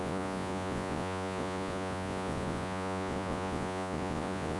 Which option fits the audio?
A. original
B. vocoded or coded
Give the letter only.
B